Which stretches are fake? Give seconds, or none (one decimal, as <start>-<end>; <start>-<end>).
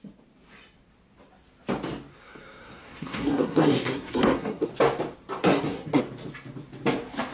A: 2.1-4.7; 5.4-6.0